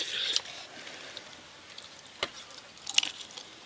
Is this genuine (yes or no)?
yes